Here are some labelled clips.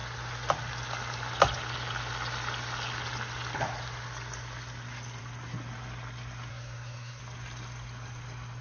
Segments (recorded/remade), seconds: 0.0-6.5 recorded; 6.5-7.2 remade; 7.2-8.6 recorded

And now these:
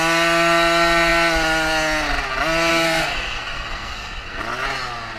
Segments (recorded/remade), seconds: 0.0-2.7 recorded; 2.7-4.4 remade; 4.4-5.2 recorded